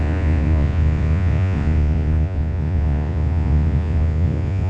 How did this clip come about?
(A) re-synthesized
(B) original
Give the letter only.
A